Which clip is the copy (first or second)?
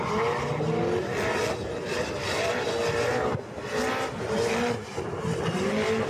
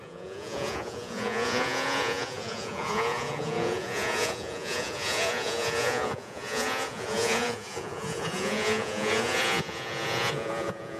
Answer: second